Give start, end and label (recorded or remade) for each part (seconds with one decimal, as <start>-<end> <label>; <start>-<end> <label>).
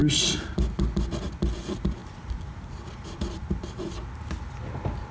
0.0-5.1 recorded